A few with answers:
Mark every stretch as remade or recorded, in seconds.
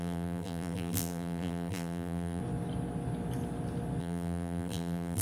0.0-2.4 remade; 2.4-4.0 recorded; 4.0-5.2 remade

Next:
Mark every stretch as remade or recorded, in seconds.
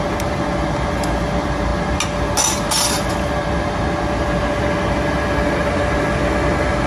0.0-6.9 recorded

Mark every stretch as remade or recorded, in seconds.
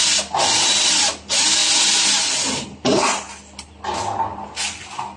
0.0-5.2 recorded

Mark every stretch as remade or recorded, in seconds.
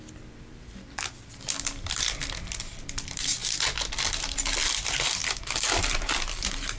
0.0-3.4 remade; 3.4-4.1 recorded; 4.1-6.8 remade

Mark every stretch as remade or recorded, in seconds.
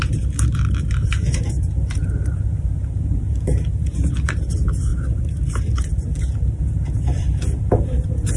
0.0-8.4 remade